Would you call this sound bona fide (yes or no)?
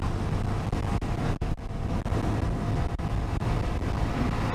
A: yes